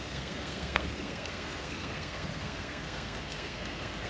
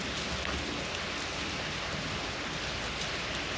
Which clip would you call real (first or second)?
second